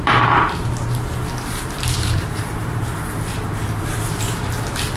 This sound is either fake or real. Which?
fake